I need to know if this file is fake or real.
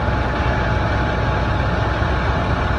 real